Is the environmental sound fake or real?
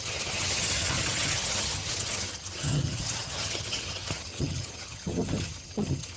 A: fake